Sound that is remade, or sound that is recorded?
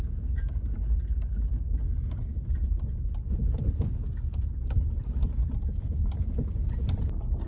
recorded